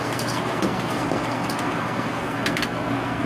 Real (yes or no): no